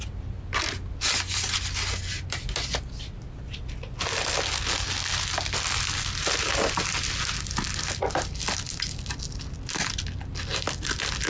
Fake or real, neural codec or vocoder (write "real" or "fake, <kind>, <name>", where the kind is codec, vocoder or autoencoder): real